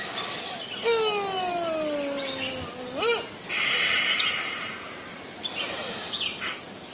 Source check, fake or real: real